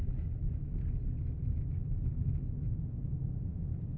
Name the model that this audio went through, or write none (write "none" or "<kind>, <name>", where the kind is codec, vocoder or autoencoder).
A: none